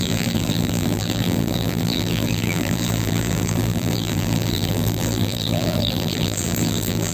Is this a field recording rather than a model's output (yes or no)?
no